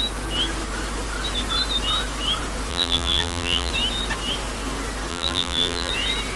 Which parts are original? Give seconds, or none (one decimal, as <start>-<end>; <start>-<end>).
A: 0.0-2.7; 3.7-5.1; 5.9-6.4